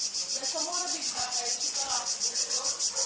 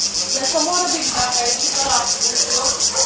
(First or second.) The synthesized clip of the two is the first